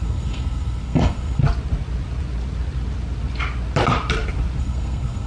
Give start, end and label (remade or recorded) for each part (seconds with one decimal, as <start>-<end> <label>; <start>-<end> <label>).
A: 0.0-1.4 remade; 1.4-4.6 recorded; 4.6-5.3 remade